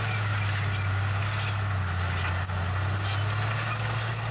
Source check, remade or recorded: recorded